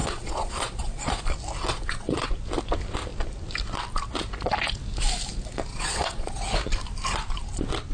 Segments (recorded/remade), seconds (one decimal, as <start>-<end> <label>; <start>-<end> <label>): 0.0-1.2 remade; 1.2-1.7 recorded; 1.7-2.3 remade; 2.3-5.7 recorded; 5.7-6.4 remade; 6.4-7.9 recorded